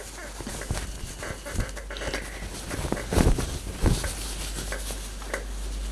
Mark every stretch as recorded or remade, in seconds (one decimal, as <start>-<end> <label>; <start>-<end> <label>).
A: 0.0-5.9 recorded